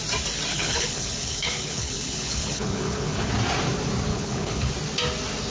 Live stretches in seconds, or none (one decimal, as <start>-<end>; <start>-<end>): 0.0-0.5; 3.3-4.1; 4.7-5.5